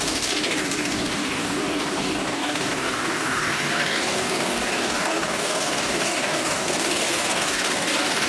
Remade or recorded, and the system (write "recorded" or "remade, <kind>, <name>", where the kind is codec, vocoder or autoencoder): remade, codec, DAC